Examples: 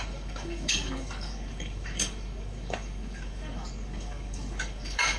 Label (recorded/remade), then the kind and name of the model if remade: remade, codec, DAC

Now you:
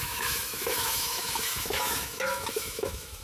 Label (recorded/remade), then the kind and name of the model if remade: remade, autoencoder, DAC-VAE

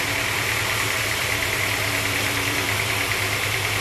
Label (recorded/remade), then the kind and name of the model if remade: remade, vocoder, BigVGAN v2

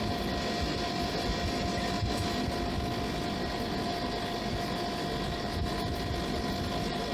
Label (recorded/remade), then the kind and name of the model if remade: recorded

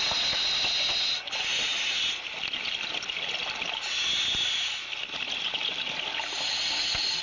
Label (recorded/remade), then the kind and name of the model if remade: recorded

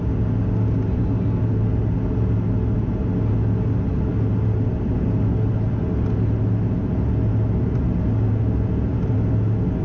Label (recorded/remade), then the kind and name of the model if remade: recorded